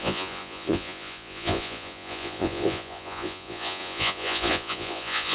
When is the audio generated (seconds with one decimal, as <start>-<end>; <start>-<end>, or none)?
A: 0.0-5.3